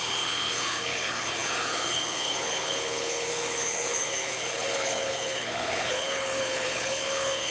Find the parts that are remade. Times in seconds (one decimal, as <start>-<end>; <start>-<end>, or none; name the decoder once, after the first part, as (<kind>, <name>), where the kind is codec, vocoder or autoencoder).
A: 0.0-7.5 (codec, HILCodec)